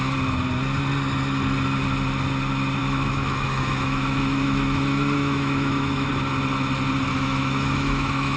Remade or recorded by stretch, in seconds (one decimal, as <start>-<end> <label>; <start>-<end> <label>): 0.0-2.8 recorded; 2.8-6.1 remade; 6.1-7.1 recorded; 7.1-8.4 remade